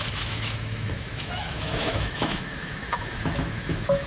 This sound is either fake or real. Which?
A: fake